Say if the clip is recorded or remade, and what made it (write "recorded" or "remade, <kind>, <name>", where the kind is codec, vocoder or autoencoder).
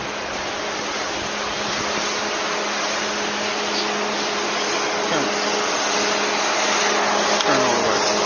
recorded